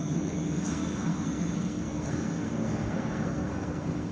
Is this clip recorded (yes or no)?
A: no